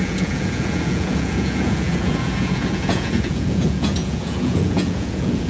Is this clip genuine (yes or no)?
no